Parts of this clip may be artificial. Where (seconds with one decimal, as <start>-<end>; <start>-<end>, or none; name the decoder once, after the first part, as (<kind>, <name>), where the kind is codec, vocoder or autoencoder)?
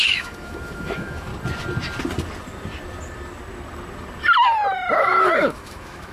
0.0-1.3 (autoencoder, DAC-VAE); 5.0-6.1